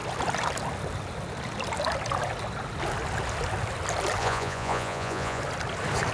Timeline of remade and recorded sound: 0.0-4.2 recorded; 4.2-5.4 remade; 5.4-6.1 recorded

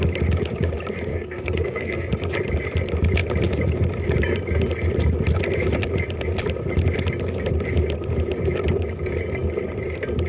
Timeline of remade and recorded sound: 0.0-1.1 recorded; 1.1-2.1 remade; 2.1-10.3 recorded

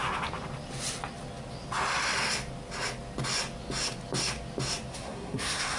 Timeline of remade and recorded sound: 0.0-4.9 recorded; 4.9-5.8 remade

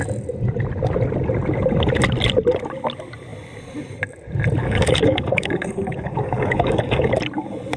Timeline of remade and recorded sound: 0.0-4.6 recorded; 4.6-7.1 remade; 7.1-7.8 recorded

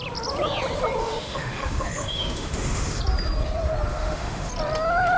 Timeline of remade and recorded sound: 0.0-1.0 recorded; 1.0-3.0 remade; 3.0-3.9 recorded; 3.9-4.5 remade; 4.5-5.2 recorded